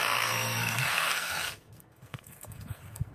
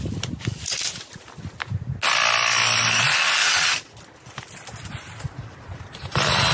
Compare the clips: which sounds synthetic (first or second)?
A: first